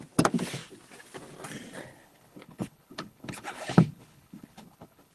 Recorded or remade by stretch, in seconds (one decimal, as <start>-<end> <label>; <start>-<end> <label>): 0.0-1.9 recorded; 1.9-5.1 remade